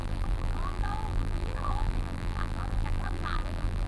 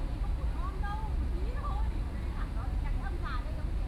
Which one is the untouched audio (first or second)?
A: second